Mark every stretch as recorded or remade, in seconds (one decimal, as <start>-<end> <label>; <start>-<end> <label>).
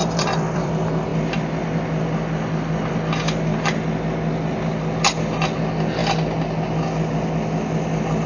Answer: 0.0-0.7 remade; 0.7-8.3 recorded